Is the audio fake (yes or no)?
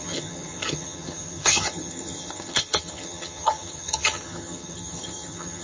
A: yes